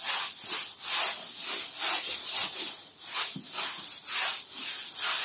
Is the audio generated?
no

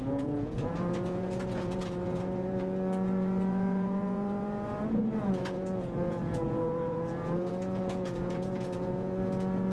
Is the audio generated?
yes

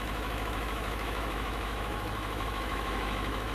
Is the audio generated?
yes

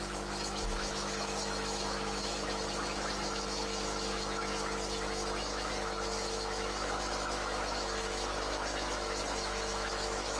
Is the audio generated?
yes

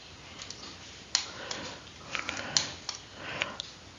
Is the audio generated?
no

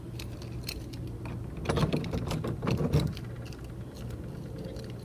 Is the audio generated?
no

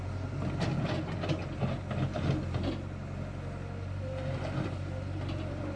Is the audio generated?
no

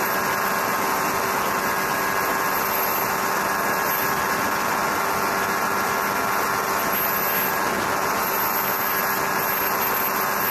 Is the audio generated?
no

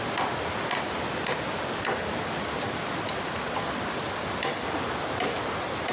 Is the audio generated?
no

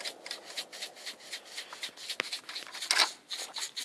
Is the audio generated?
no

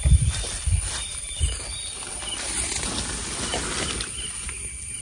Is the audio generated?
yes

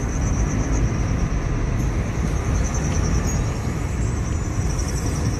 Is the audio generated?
yes